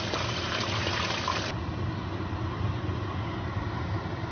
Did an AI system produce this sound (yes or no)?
no